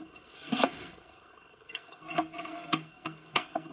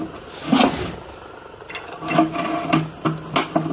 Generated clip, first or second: first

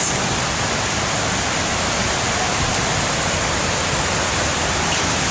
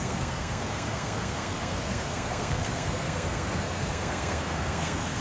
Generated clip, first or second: second